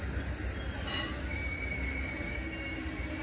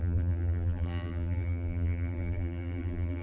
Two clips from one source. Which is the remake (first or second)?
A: second